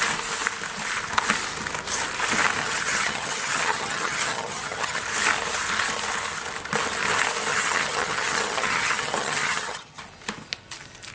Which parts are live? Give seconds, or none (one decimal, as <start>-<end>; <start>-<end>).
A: 0.0-2.6; 5.0-7.5; 10.0-11.1